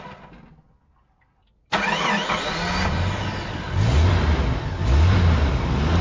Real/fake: real